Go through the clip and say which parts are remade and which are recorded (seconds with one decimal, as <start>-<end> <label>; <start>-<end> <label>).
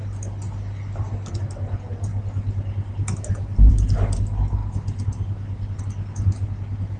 0.0-7.0 recorded